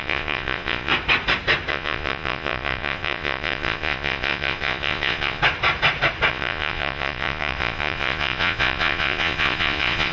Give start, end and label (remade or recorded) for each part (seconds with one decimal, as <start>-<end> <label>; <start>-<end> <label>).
0.0-0.9 remade; 0.9-1.7 recorded; 1.7-5.4 remade; 5.4-6.3 recorded; 6.3-10.1 remade